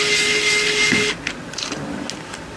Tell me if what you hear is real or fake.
real